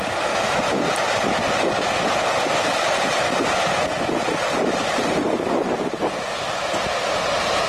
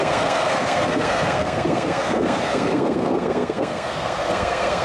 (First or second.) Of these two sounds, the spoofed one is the second